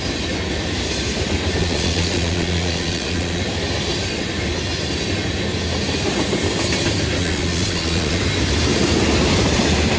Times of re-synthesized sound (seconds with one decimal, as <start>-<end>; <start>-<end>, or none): 1.6-3.4; 7.2-8.2